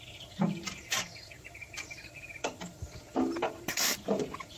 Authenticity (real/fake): fake